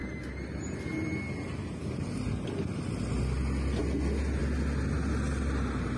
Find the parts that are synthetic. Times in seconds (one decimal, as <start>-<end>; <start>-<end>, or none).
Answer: none